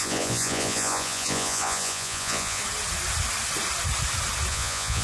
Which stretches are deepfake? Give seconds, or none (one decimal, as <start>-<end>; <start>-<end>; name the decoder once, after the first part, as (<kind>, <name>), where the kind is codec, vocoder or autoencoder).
0.0-2.6 (vocoder, Vocos); 4.5-5.0